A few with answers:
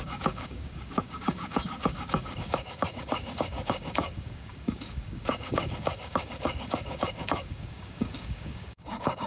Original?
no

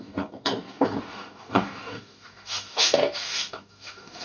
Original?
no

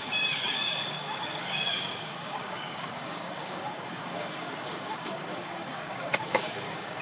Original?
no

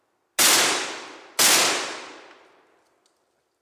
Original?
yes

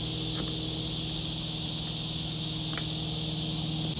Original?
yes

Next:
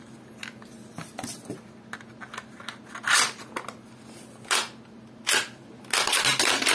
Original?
yes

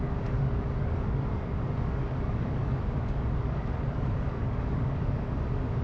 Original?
no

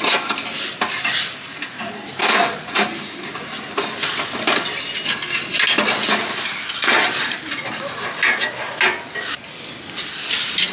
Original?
yes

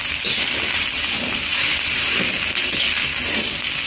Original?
yes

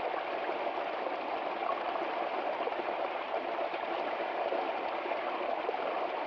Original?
yes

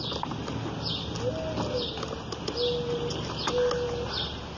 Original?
yes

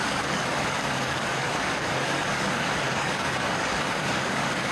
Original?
no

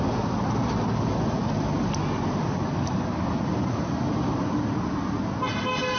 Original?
yes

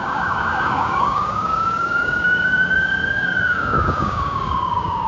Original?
no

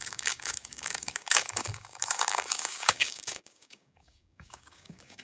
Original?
no